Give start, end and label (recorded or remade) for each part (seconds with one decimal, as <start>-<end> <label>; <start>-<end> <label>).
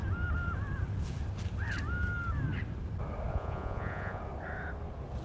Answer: 0.0-3.3 recorded; 3.3-4.2 remade; 4.2-5.2 recorded